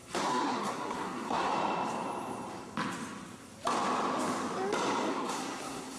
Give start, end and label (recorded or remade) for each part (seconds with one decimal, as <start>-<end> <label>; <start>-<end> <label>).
0.0-1.5 remade; 1.5-5.1 recorded; 5.1-6.0 remade